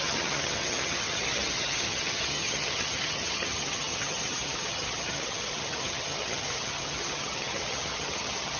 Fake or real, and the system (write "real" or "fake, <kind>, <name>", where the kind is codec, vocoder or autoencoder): fake, vocoder, HiFi-GAN